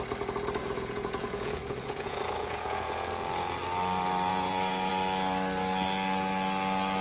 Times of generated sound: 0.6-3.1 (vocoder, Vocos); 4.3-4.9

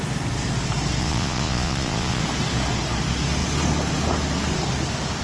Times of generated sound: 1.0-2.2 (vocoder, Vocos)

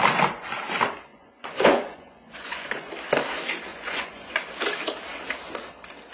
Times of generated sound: 1.1-2.9 (vocoder, Vocos); 3.7-4.4